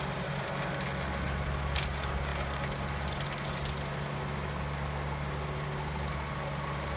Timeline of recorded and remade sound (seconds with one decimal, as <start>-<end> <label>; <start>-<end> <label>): 0.0-7.0 recorded